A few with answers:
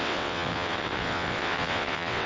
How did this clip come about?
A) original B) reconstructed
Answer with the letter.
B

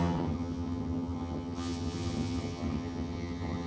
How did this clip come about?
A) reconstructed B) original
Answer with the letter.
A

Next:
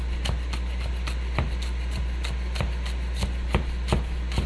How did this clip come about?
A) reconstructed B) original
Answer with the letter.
B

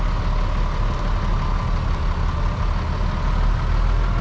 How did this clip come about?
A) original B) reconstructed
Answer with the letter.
A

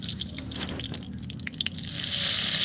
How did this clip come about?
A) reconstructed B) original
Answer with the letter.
B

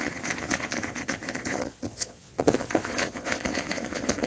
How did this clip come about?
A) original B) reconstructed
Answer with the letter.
B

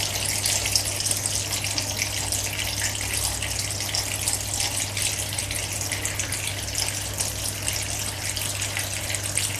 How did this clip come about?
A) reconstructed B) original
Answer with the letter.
B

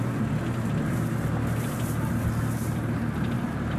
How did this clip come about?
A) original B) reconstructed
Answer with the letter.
A